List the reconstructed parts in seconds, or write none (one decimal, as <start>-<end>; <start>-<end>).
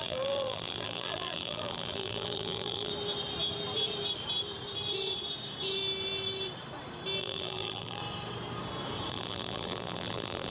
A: 0.0-2.9; 7.2-8.0; 9.1-10.5